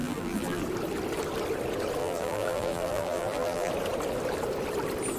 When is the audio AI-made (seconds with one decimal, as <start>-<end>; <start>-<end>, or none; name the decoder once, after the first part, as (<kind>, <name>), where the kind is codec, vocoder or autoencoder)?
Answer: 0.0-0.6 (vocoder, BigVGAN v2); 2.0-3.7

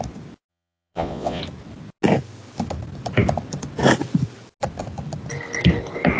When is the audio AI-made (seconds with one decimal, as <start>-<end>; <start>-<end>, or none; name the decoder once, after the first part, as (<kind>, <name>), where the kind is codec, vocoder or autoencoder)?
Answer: 0.5-1.4 (vocoder, Vocos)

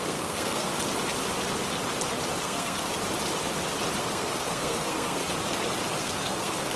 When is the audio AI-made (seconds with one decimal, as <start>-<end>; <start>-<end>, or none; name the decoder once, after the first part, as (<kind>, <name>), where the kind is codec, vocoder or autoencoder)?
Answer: 0.0-0.7 (codec, SNAC); 2.4-2.9; 4.0-5.2; 6.0-6.8

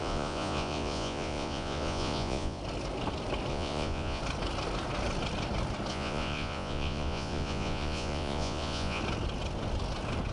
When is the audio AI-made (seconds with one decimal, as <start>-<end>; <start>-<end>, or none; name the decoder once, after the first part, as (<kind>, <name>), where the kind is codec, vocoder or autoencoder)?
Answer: 0.0-2.6 (vocoder, Vocos); 3.5-4.2; 5.9-9.0

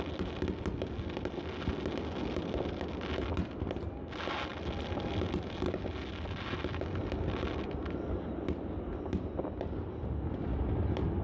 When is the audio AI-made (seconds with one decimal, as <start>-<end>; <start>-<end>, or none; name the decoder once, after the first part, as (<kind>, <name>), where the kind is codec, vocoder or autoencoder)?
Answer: none